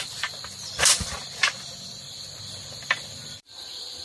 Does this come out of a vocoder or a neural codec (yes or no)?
yes